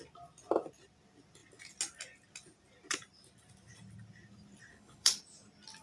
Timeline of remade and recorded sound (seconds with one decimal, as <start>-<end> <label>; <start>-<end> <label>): 0.0-4.7 recorded; 4.7-5.2 remade; 5.2-5.8 recorded